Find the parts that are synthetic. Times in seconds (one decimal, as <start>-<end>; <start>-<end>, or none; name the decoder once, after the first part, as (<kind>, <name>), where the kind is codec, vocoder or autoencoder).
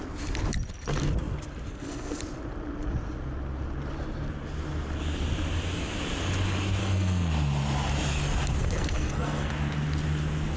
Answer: 1.7-2.2 (codec, SNAC); 6.8-7.3; 8.6-9.5